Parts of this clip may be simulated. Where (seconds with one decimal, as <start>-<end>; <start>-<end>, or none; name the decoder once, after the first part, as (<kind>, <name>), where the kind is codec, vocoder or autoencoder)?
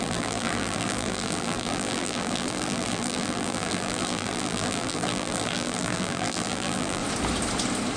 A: 0.0-7.0 (vocoder, BigVGAN v2)